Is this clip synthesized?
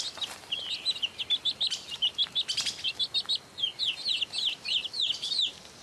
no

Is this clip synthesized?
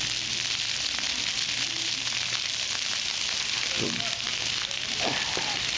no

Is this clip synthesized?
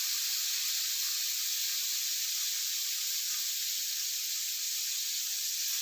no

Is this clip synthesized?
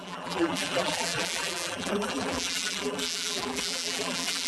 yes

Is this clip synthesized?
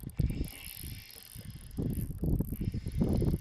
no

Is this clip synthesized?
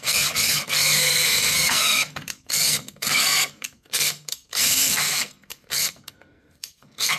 yes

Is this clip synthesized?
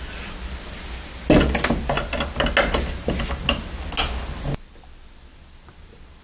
no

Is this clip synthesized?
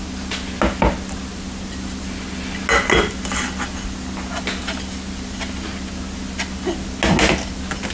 no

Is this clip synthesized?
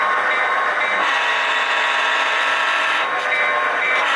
yes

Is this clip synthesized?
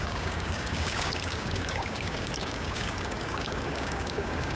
yes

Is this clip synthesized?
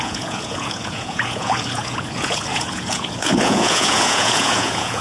yes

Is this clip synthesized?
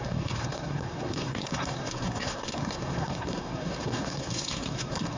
yes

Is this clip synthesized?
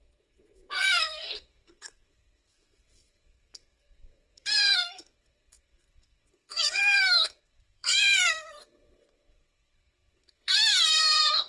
yes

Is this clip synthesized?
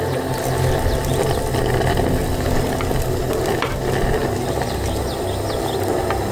no